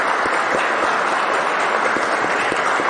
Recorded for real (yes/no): yes